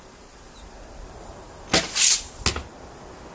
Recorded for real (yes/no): yes